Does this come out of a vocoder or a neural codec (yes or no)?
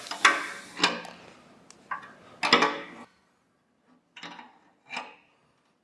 no